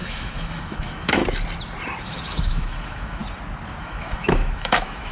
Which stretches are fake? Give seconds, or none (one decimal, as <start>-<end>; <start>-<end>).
0.0-1.2; 2.0-3.2; 3.8-5.1